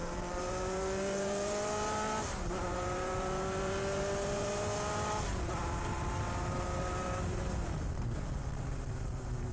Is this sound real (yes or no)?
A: no